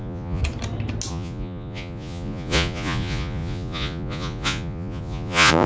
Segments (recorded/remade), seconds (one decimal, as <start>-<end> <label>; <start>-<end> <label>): 0.0-0.4 remade; 0.4-1.1 recorded; 1.1-5.7 remade